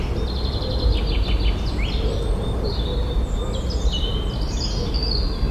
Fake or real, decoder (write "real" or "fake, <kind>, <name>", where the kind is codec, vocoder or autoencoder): real